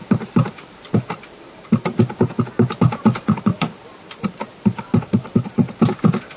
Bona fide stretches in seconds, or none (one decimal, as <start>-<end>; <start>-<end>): 0.0-6.4